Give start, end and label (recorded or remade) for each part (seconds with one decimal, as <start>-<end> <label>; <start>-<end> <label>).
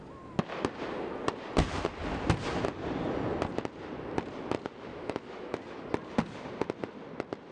0.0-4.9 recorded; 4.9-5.6 remade; 5.6-7.5 recorded